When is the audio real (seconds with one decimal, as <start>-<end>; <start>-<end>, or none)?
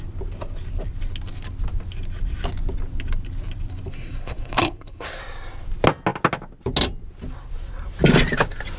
0.0-3.9; 5.2-8.8